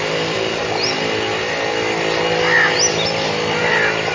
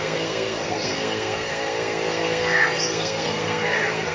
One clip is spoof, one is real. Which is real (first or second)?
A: first